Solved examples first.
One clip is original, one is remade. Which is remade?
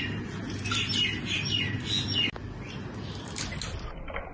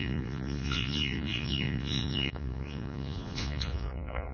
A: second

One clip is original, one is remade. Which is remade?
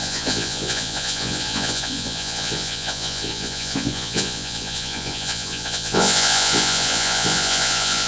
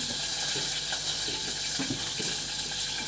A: first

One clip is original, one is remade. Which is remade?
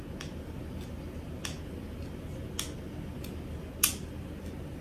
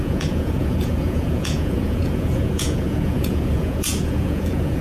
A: second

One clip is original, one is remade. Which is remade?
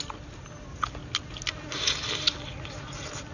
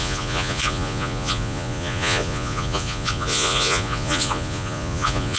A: second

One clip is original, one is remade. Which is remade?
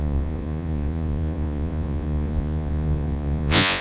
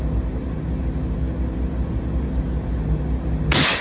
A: first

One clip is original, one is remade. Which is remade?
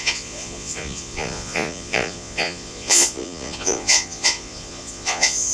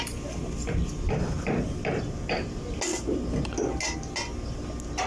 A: first